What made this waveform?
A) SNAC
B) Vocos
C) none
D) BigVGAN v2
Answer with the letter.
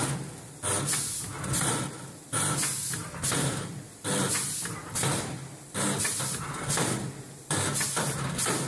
C